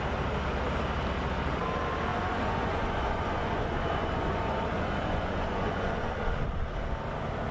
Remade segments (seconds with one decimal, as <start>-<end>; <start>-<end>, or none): 2.1-6.1